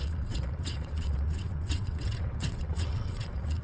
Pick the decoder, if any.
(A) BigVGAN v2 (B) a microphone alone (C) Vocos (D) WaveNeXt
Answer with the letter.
D